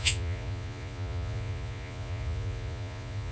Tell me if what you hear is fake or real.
fake